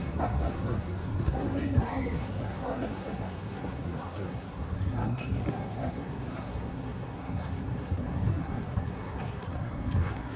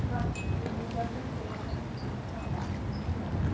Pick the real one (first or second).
second